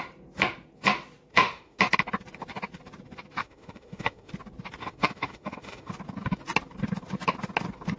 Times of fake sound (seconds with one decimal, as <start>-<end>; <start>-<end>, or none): 1.3-1.8; 3.4-4.3; 4.8-5.9